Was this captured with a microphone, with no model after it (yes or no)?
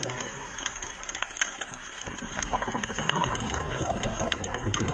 no